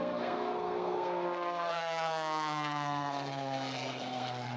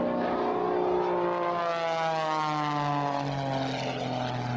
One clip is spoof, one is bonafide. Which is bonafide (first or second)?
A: second